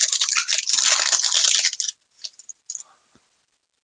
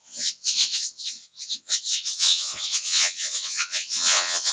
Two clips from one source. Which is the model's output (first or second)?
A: second